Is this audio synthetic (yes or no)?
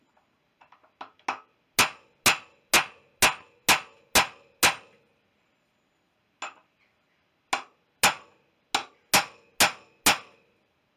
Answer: no